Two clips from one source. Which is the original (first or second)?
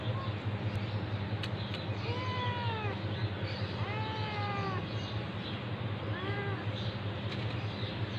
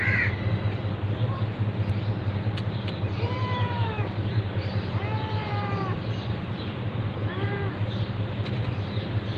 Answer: first